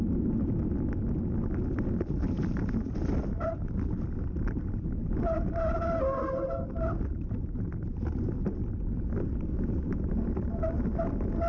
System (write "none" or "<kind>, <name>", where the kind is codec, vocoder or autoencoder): none